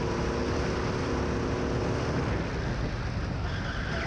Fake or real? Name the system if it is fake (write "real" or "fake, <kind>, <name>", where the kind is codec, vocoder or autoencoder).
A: real